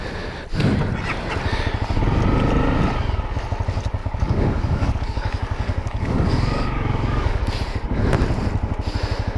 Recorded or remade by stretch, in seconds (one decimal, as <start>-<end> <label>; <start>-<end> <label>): 0.0-4.0 recorded; 4.0-7.4 remade; 7.4-9.4 recorded